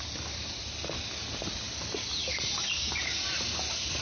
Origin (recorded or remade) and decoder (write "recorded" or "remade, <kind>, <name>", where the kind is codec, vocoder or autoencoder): recorded